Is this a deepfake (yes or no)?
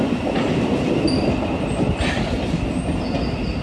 no